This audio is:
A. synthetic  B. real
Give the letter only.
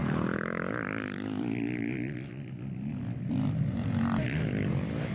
B